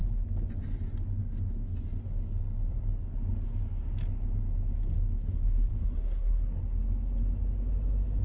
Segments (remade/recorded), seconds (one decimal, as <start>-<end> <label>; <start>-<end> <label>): 0.0-5.8 recorded; 5.8-6.6 remade; 6.6-8.2 recorded